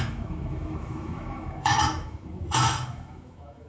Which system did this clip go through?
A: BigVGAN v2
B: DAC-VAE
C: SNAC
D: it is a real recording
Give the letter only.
B